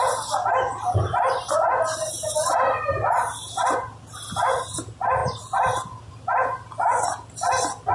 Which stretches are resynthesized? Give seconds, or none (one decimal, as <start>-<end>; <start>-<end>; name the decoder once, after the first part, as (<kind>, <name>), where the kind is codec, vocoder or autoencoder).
none